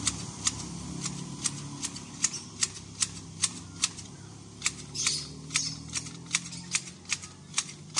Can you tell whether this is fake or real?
real